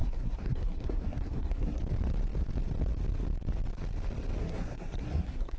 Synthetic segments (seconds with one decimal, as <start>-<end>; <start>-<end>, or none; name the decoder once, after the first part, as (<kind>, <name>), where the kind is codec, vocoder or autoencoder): 0.0-1.8 (codec, SNAC); 4.4-5.6